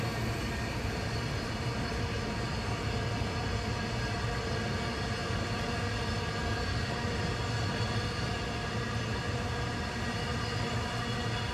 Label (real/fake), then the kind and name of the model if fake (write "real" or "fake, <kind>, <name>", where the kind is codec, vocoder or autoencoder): real